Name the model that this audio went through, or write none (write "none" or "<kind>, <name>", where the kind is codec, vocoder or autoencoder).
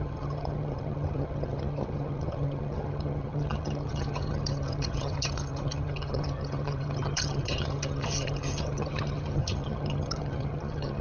vocoder, HiFi-GAN